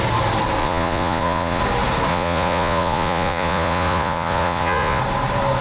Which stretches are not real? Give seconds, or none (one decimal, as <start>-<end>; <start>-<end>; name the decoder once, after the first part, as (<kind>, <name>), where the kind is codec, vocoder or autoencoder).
0.6-1.6 (vocoder, Vocos); 2.1-5.0

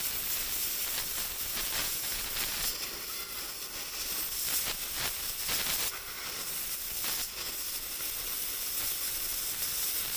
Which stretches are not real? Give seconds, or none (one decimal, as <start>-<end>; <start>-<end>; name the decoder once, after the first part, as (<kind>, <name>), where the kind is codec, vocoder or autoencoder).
1.8-2.3 (vocoder, Vocos)

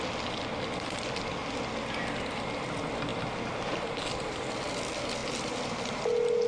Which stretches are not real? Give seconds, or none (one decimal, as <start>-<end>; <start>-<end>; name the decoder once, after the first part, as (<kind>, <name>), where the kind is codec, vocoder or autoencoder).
none